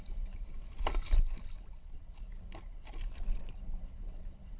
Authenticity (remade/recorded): recorded